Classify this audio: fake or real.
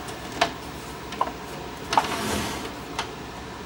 real